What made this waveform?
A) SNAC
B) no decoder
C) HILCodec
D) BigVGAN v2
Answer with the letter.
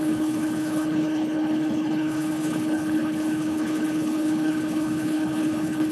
C